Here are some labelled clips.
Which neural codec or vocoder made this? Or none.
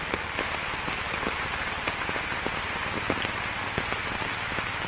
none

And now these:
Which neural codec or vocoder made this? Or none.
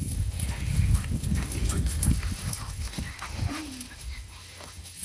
autoencoder, DAC-VAE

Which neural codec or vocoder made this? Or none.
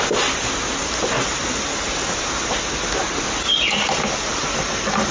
none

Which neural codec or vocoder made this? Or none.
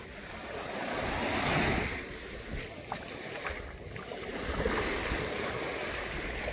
none